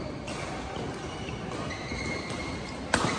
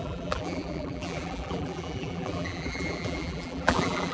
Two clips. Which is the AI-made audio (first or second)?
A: second